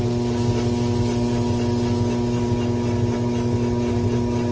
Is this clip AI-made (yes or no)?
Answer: no